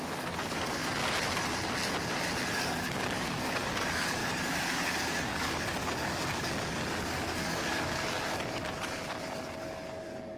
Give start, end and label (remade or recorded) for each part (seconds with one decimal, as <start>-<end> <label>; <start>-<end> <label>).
0.0-0.8 remade; 0.8-2.6 recorded; 2.6-10.4 remade